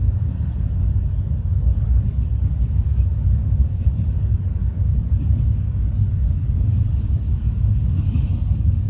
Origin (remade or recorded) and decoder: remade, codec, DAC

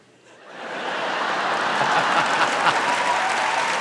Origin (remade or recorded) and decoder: recorded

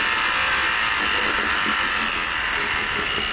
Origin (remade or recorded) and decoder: recorded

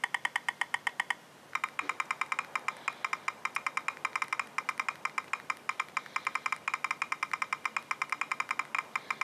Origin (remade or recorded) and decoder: recorded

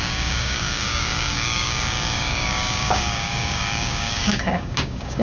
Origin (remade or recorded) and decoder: remade, codec, DAC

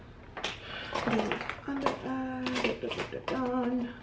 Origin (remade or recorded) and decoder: recorded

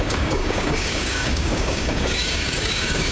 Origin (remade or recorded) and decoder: remade, codec, DAC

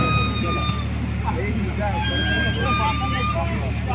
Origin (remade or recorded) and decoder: recorded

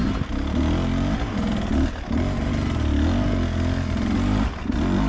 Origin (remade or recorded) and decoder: recorded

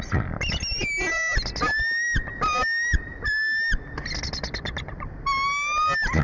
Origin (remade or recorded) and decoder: recorded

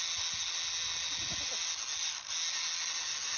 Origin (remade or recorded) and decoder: recorded